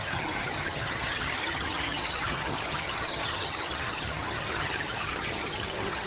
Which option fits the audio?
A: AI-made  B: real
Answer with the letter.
A